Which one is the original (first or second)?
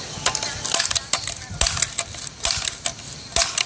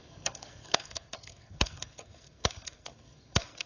first